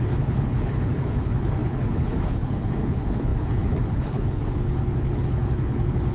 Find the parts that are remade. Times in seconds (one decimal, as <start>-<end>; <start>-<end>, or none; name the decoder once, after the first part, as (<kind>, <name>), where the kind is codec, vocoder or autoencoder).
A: 0.0-6.1 (codec, HILCodec)

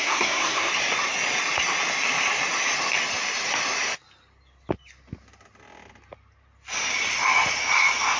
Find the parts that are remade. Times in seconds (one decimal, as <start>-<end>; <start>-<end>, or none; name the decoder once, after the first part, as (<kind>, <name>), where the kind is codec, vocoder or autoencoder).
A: 0.0-0.7 (codec, SNAC)